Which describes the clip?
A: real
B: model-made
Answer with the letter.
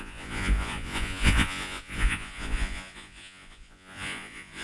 B